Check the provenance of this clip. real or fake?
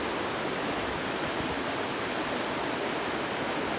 real